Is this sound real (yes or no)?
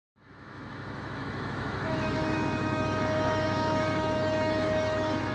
no